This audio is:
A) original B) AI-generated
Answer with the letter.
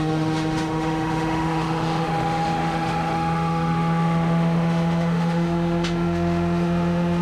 B